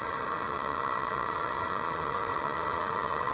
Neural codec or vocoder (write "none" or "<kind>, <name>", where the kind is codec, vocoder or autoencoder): vocoder, WaveNeXt